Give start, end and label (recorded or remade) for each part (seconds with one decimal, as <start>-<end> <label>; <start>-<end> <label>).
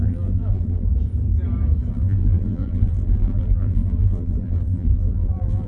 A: 0.0-0.9 remade; 0.9-1.9 recorded; 1.9-5.7 remade